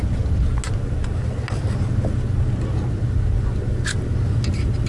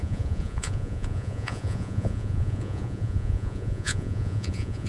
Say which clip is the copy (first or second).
second